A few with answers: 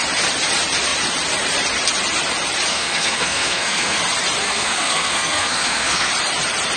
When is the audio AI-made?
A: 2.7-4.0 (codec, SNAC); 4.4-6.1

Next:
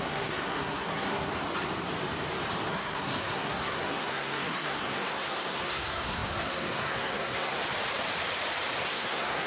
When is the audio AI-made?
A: 0.0-1.3 (codec, SNAC); 2.7-7.6; 8.9-9.5